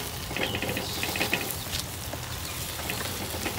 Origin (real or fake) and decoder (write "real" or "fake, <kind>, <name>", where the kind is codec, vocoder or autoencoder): real